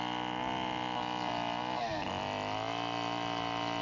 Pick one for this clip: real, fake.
real